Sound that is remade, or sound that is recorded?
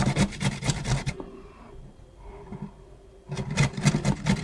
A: recorded